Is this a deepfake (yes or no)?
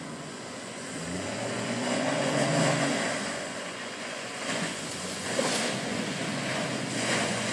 yes